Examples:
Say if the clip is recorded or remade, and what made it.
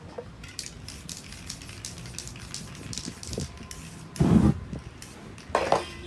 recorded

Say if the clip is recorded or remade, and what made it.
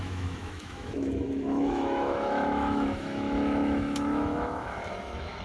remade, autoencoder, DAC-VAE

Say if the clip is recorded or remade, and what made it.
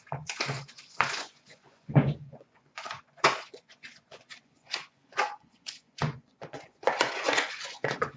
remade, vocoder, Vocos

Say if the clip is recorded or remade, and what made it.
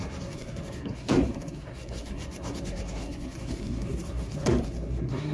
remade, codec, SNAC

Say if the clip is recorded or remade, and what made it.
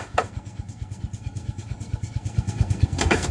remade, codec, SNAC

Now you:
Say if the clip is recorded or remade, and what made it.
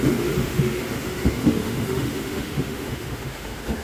remade, autoencoder, DAC-VAE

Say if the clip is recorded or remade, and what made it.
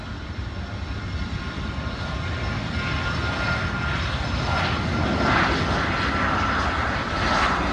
recorded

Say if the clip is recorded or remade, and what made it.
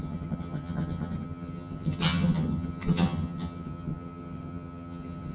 remade, vocoder, HiFi-GAN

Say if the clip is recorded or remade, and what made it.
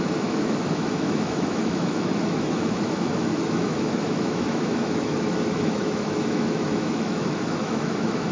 remade, autoencoder, DAC-VAE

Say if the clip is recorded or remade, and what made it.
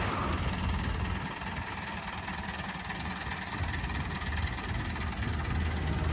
recorded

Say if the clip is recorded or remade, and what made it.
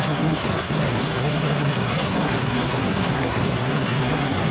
remade, codec, SNAC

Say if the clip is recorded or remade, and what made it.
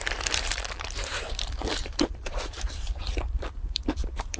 remade, vocoder, BigVGAN v2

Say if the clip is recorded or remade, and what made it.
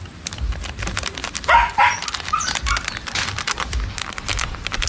recorded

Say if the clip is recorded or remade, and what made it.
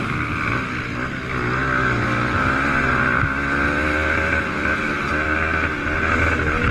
recorded